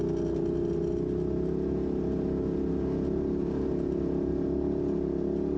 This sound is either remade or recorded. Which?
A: recorded